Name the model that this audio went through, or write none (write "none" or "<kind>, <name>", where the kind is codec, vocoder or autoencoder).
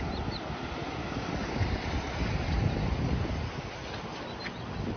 none